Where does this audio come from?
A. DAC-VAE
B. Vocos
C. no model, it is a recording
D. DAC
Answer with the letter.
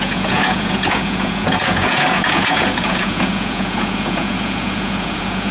B